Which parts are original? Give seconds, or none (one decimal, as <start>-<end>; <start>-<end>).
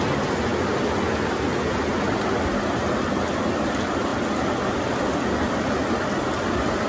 0.0-6.9